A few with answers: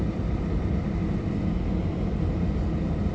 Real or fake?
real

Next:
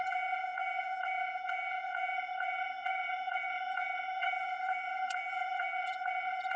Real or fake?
fake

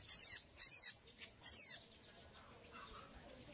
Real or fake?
real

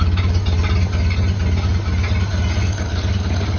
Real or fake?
real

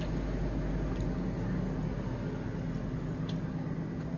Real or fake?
real